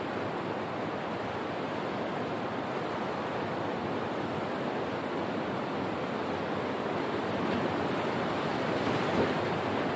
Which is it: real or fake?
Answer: real